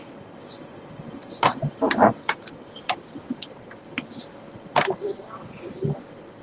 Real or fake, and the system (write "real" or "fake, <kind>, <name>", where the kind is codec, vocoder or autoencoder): real